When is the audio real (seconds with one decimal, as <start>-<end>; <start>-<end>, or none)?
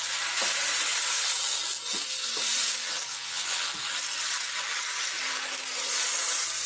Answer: 0.0-3.1; 3.7-6.7